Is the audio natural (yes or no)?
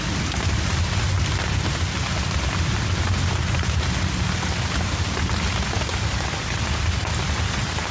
yes